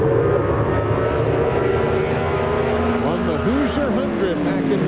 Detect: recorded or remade recorded